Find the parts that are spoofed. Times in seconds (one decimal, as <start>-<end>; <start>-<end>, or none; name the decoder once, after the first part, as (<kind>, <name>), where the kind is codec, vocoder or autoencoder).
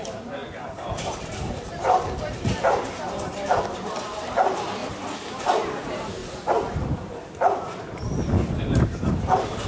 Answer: 0.0-4.8 (vocoder, BigVGAN v2); 5.4-6.2; 7.8-9.7